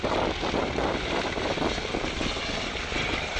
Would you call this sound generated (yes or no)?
no